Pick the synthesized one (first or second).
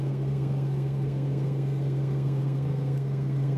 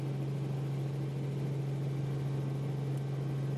first